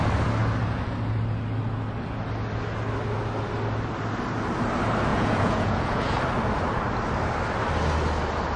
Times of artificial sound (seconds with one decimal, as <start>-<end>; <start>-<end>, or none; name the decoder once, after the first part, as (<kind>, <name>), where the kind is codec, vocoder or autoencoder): 5.1-6.2 (vocoder, Vocos)